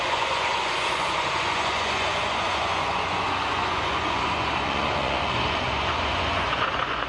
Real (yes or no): no